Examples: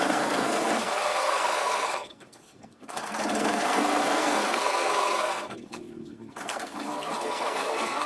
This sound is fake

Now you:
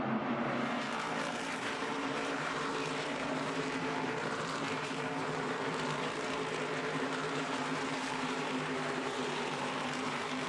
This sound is fake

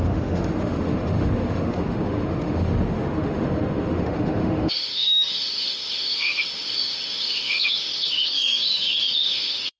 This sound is fake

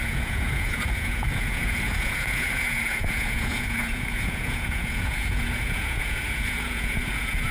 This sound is fake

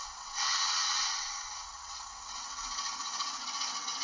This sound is fake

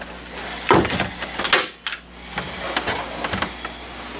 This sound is real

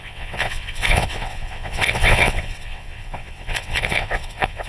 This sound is fake